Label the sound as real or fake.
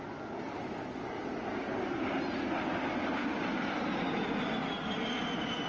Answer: real